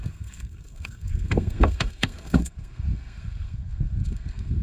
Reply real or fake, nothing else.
fake